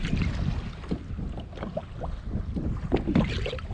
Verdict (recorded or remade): recorded